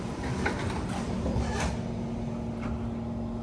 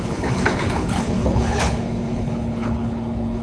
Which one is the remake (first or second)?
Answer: second